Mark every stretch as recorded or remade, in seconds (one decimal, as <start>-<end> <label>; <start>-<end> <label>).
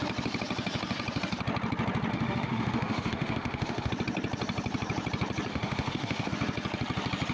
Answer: 0.0-2.1 recorded; 2.1-3.9 remade; 3.9-5.5 recorded; 5.5-6.3 remade; 6.3-7.3 recorded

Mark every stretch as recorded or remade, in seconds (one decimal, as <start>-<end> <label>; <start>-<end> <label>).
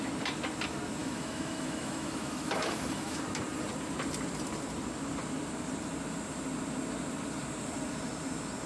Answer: 0.0-1.0 recorded; 1.0-3.2 remade; 3.2-8.7 recorded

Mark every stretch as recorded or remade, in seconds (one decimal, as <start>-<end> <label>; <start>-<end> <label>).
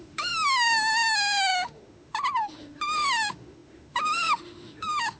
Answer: 0.0-5.2 remade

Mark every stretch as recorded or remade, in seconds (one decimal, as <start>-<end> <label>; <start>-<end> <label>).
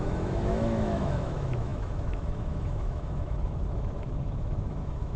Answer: 0.0-5.2 remade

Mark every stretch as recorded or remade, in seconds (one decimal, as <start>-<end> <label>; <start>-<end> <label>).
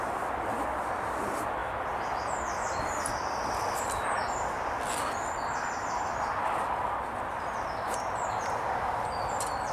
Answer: 0.0-9.7 recorded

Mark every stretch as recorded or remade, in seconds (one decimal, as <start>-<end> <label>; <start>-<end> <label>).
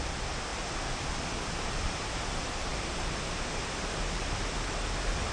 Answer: 0.0-5.3 recorded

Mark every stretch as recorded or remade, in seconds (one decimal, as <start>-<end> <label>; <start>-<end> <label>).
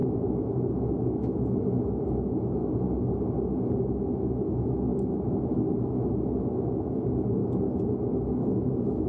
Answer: 0.0-2.6 remade; 2.6-3.9 recorded; 3.9-4.9 remade; 4.9-5.4 recorded; 5.4-7.4 remade; 7.4-8.1 recorded; 8.1-9.1 remade